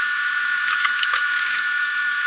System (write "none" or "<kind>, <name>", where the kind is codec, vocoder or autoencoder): autoencoder, DAC-VAE